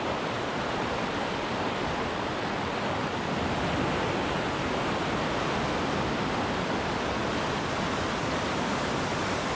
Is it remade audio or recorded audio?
recorded